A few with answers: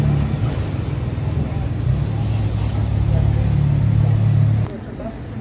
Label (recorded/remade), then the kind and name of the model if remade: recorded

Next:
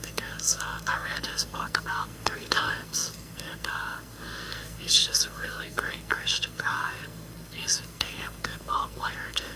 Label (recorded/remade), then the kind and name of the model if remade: remade, codec, SNAC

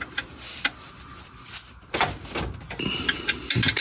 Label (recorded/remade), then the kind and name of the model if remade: recorded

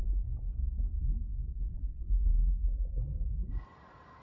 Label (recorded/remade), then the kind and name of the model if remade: recorded